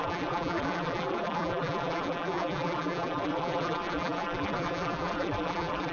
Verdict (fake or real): fake